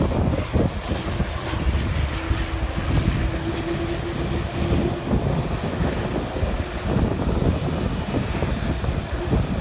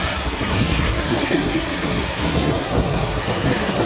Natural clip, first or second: first